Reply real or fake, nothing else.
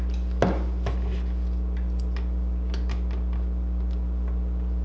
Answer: real